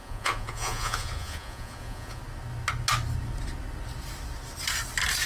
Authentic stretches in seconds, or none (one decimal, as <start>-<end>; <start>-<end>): 2.2-5.3